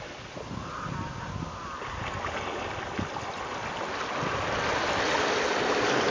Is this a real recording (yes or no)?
yes